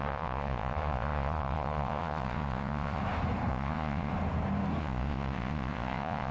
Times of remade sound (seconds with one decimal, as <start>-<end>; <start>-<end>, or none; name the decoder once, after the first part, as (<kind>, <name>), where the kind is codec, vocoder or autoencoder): 0.0-3.0 (vocoder, Vocos); 3.5-4.1; 4.8-6.3

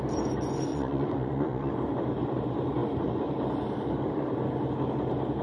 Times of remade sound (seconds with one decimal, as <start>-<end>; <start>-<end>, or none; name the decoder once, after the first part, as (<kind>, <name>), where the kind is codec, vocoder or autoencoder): 0.7-1.7 (vocoder, Vocos)